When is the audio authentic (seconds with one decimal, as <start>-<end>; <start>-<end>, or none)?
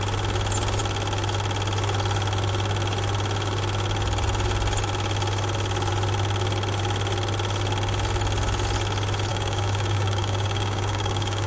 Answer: 0.0-9.3